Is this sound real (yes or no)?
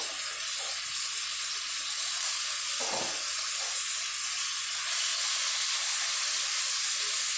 yes